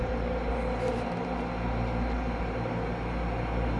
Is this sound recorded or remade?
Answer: recorded